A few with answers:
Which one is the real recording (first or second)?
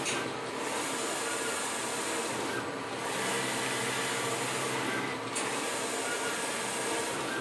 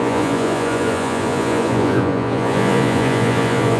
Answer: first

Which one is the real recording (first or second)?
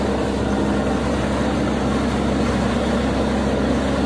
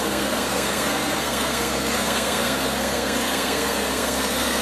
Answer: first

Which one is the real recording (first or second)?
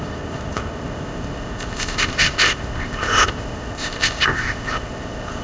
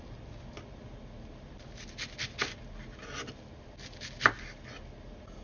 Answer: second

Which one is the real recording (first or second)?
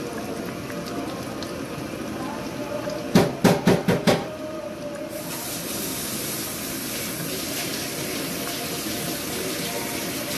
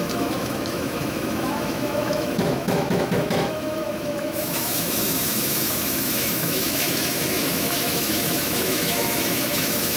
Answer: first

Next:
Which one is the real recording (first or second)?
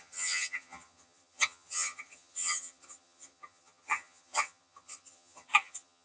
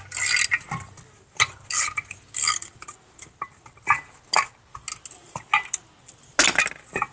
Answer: second